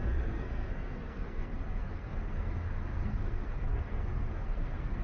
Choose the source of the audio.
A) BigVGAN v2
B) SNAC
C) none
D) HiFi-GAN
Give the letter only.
B